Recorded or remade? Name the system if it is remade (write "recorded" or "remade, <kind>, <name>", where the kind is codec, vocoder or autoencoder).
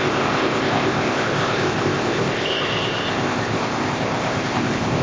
remade, codec, ZipCodec